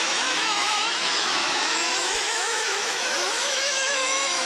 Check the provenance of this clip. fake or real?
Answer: fake